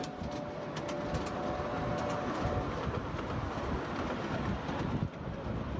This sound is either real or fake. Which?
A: real